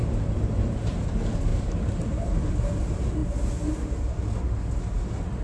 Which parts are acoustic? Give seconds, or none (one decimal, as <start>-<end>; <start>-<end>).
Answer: 1.1-1.5; 2.5-5.4